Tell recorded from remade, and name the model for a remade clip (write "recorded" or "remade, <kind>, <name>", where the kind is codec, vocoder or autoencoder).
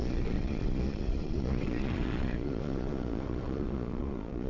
remade, vocoder, Vocos